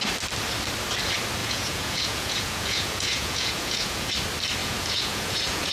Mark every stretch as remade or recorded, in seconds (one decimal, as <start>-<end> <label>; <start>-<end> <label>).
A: 0.0-1.4 recorded; 1.4-4.1 remade; 4.1-4.6 recorded; 4.6-5.7 remade